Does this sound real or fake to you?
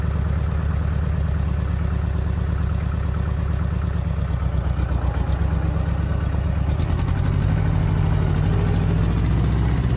real